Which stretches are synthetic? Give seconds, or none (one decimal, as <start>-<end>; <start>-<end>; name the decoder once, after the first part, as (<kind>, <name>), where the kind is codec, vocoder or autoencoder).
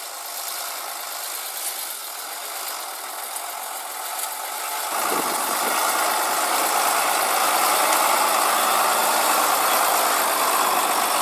none